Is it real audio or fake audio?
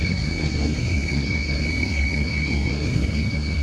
fake